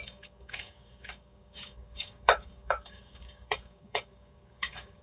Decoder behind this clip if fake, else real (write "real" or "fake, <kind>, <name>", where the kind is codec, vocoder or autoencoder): fake, codec, DAC